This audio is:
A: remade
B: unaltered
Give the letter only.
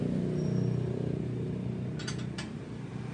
B